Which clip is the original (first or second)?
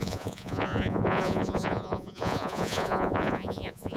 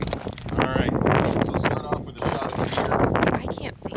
second